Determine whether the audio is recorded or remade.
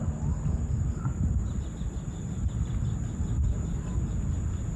recorded